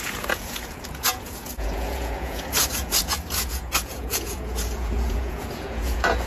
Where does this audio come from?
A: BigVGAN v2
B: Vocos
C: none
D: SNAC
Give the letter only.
B